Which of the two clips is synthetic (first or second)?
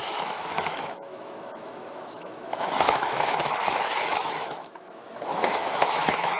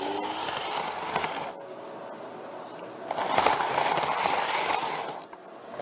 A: first